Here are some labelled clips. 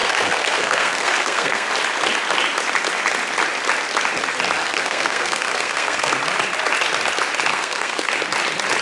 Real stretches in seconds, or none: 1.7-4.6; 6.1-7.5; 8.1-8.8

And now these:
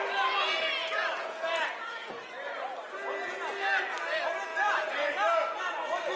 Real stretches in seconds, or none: 0.0-0.8; 2.3-4.5; 5.1-6.2

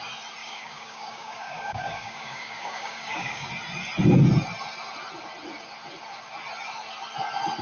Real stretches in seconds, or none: 0.0-0.4; 3.5-7.6

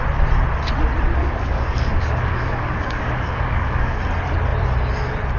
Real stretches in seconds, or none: 0.0-1.2; 4.0-5.4

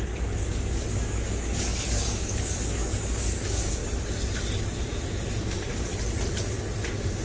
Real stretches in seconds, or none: 3.8-5.4; 5.9-6.8

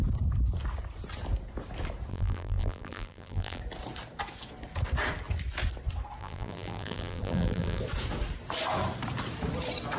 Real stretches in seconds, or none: 0.0-2.1; 3.6-6.2; 7.8-10.0

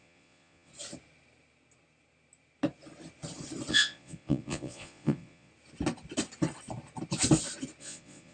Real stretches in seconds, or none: 0.7-3.7; 5.5-7.8

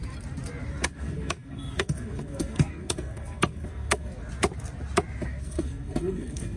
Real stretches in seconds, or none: 0.0-0.9; 4.1-5.4